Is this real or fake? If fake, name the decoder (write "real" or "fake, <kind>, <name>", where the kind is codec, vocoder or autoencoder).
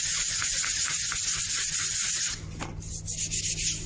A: real